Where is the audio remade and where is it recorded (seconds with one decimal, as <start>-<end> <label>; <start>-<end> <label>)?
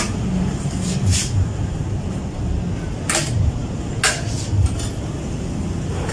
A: 0.0-6.1 recorded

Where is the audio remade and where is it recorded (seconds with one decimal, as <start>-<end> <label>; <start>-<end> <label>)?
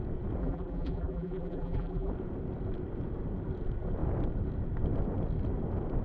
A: 0.0-0.4 recorded; 0.4-2.1 remade; 2.1-6.0 recorded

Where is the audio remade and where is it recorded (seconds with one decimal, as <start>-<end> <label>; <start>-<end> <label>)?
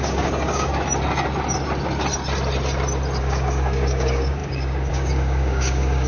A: 0.0-0.7 remade; 0.7-3.2 recorded; 3.2-6.1 remade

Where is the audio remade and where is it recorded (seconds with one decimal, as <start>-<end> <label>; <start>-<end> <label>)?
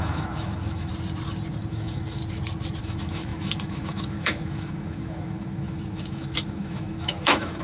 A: 0.0-0.9 remade; 0.9-1.7 recorded; 1.7-2.2 remade; 2.2-2.8 recorded; 2.8-7.6 remade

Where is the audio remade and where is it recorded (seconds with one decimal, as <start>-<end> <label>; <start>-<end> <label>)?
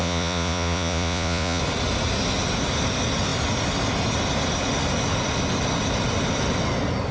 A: 0.0-1.6 remade; 1.6-7.1 recorded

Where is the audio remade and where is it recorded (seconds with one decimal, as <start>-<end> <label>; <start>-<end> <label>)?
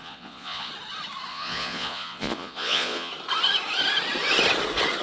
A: 0.0-0.7 remade; 0.7-1.3 recorded; 1.3-3.1 remade; 3.1-5.0 recorded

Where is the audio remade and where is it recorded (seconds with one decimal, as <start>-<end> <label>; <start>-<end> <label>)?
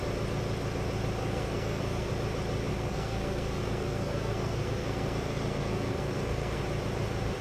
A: 0.0-1.2 recorded; 1.2-2.1 remade; 2.1-2.7 recorded; 2.7-6.6 remade; 6.6-7.4 recorded